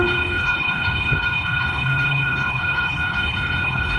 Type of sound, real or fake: fake